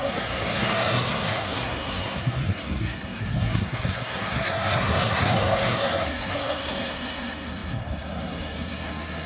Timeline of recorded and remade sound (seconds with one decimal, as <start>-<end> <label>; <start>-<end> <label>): 0.0-9.3 remade